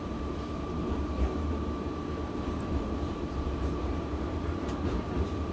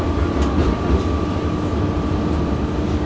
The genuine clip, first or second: second